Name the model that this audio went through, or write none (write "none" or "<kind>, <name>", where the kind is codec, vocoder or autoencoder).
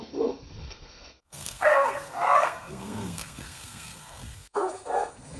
codec, SNAC